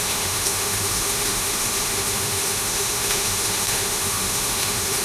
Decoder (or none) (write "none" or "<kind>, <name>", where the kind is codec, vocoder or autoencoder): autoencoder, DAC-VAE